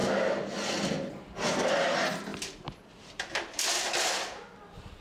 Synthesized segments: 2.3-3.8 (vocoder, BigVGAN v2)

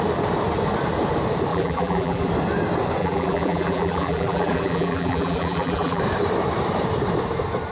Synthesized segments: 1.5-2.3 (vocoder, BigVGAN v2); 3.0-6.0

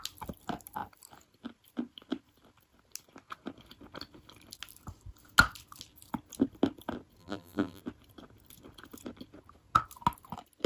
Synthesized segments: 7.2-7.8 (vocoder, BigVGAN v2)

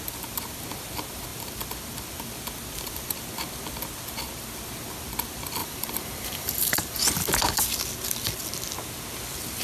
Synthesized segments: 5.6-7.0 (vocoder, BigVGAN v2)

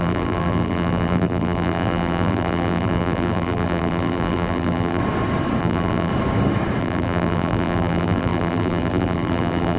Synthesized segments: 0.0-5.0 (vocoder, BigVGAN v2); 5.6-6.1; 6.8-9.8

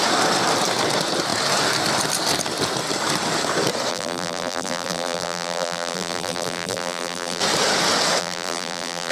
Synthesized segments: 3.9-7.4 (vocoder, BigVGAN v2); 8.2-9.1